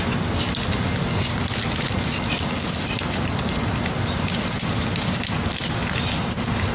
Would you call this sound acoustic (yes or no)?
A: yes